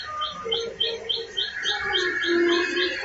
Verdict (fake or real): real